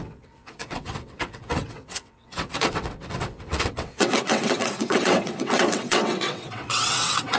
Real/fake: fake